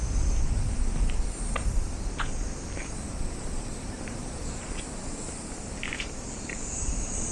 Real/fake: fake